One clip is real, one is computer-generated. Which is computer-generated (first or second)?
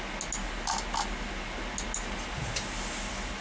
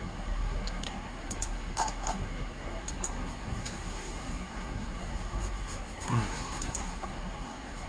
second